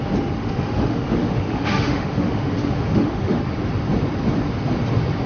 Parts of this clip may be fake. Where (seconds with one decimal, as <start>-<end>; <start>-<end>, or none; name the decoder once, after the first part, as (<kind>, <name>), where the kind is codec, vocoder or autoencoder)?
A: 0.4-3.4 (autoencoder, DAC-VAE)

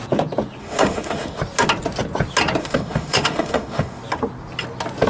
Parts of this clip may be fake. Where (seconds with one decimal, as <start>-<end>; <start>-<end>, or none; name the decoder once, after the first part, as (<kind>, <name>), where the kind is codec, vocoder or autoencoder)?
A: 0.6-1.4 (autoencoder, DAC-VAE); 2.6-4.0

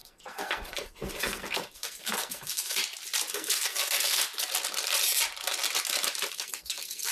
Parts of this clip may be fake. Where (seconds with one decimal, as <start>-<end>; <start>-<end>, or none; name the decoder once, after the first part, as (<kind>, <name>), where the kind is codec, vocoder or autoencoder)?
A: 0.0-2.8 (codec, SNAC); 3.3-4.3; 6.3-7.1

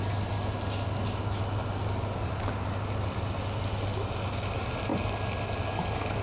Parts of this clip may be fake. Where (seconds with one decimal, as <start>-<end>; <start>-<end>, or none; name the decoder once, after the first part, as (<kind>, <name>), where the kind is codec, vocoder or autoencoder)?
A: none

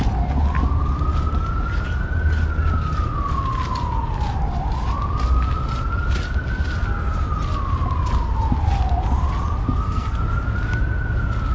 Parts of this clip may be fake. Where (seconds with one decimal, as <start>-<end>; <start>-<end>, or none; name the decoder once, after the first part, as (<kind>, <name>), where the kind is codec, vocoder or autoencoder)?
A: 9.6-10.2 (codec, SNAC)

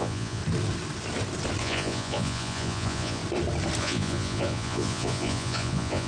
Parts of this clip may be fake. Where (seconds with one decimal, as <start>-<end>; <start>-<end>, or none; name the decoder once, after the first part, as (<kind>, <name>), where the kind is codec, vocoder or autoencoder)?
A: 0.0-0.4 (vocoder, Vocos); 1.6-3.2; 3.8-6.1

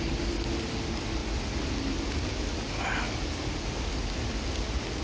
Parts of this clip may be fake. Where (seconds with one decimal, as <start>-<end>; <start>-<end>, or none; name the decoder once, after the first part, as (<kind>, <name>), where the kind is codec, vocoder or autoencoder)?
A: none